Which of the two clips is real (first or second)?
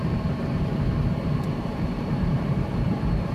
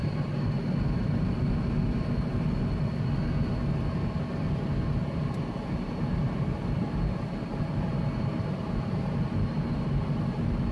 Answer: second